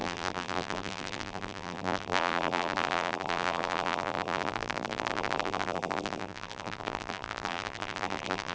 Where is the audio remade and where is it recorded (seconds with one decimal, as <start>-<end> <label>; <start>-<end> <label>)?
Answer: 0.0-8.5 remade